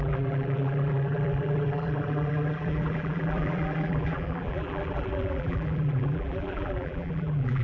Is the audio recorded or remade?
remade